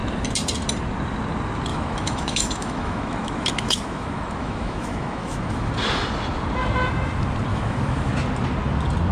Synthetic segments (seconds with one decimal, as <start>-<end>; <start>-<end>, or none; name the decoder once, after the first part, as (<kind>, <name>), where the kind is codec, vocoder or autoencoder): 1.7-5.7 (autoencoder, DAC-VAE); 7.5-8.1